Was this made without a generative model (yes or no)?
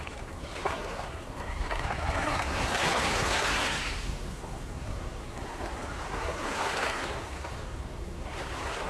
no